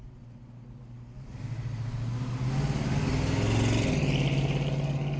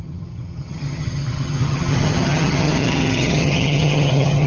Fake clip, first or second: second